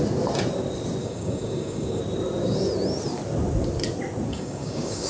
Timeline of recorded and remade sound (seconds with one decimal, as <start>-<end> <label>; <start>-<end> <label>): 0.0-1.0 recorded; 1.0-2.0 remade; 2.0-4.3 recorded; 4.3-5.1 remade